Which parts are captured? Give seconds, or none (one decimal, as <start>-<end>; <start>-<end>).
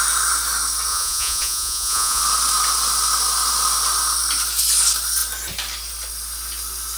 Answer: 0.0-0.9; 2.2-7.0